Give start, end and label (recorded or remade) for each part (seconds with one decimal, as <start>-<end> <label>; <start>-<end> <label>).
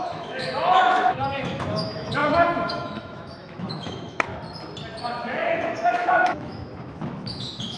0.0-4.3 remade; 4.3-5.0 recorded; 5.0-7.8 remade